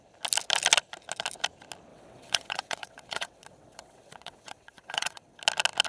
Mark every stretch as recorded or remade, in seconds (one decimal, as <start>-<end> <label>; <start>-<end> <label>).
0.0-1.9 recorded; 1.9-5.4 remade; 5.4-5.9 recorded